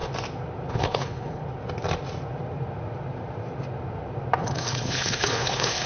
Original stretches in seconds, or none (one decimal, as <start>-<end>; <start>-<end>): 0.0-0.7; 1.4-4.4

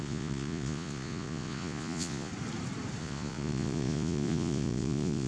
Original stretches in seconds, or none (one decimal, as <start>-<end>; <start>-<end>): 2.3-3.0

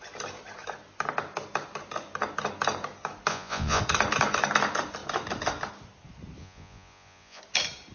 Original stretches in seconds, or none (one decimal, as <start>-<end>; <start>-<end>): 0.0-3.3; 3.8-6.4; 7.4-7.9

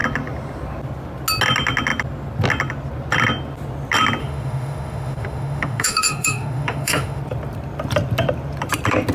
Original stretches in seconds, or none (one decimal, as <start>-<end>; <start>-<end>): 0.0-4.2; 7.2-9.1

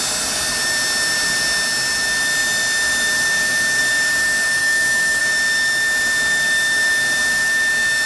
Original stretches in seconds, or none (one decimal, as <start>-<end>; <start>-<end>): 0.0-4.6; 5.2-8.1

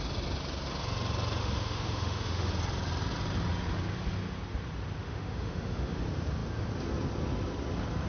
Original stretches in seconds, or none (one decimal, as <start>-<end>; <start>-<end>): 0.0-1.4; 2.5-5.0; 6.0-8.1

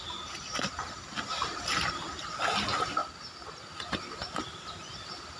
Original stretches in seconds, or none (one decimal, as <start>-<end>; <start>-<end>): 0.0-1.3; 2.1-5.4